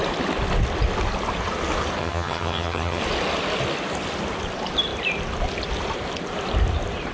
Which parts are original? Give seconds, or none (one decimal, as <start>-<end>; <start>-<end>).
0.0-2.0; 3.0-7.1